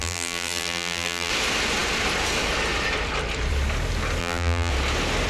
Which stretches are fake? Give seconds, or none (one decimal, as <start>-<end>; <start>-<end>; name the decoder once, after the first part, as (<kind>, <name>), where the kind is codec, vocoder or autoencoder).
0.0-1.3 (vocoder, BigVGAN v2); 4.2-4.7